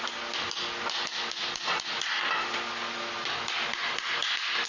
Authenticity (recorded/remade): recorded